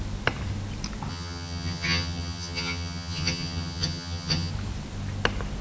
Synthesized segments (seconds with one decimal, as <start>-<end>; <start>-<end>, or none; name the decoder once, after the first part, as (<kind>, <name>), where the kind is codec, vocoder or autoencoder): 1.1-4.5 (vocoder, HiFi-GAN)